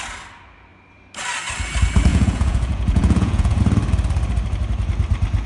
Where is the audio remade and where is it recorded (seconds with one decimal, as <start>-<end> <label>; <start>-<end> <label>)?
0.0-2.1 recorded; 2.1-3.6 remade; 3.6-5.5 recorded